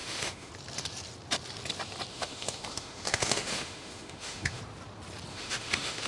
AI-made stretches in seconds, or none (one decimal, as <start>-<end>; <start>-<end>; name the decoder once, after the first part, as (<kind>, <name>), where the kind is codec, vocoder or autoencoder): 0.0-0.5 (autoencoder, DAC-VAE); 2.1-4.6; 5.3-6.1